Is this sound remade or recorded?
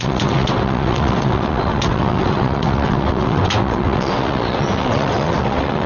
remade